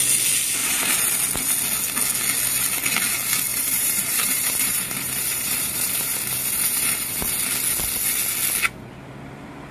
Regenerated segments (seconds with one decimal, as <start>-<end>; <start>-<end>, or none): 0.6-1.1; 3.5-7.4

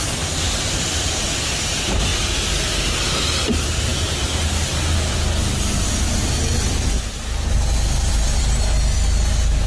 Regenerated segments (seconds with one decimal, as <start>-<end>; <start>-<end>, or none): none